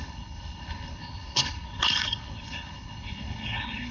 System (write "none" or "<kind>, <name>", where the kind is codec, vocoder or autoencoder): codec, HILCodec